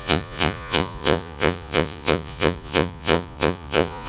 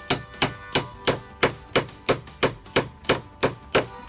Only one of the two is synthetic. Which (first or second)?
first